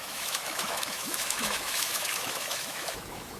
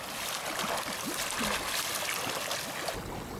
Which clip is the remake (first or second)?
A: first